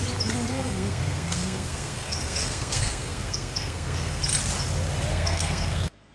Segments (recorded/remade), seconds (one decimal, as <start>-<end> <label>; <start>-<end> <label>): 0.0-0.5 recorded; 0.5-4.2 remade; 4.2-5.1 recorded; 5.1-6.1 remade